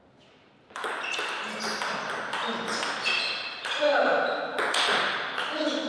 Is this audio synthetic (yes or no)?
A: no